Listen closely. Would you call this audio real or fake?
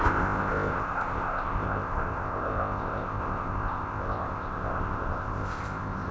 fake